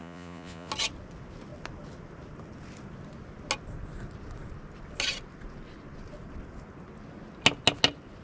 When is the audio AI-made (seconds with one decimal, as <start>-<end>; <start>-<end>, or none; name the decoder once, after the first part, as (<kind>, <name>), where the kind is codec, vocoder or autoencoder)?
0.0-0.7 (vocoder, Vocos)